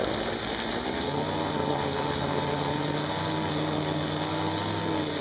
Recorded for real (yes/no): yes